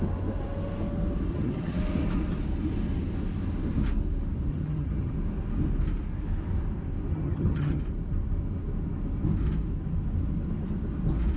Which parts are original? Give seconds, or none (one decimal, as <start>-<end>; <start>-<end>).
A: 0.0-1.3; 1.8-4.5; 5.1-7.1; 7.8-11.4